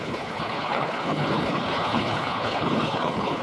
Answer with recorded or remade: remade